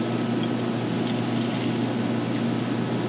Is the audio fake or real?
real